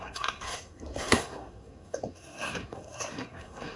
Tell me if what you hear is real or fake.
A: fake